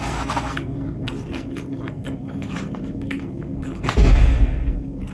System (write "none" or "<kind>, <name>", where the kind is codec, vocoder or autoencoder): codec, SNAC